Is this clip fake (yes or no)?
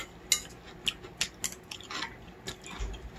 no